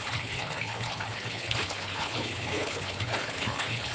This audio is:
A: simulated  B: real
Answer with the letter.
A